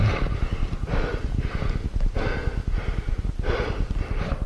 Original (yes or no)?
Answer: yes